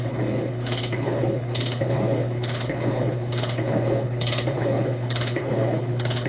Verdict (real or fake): fake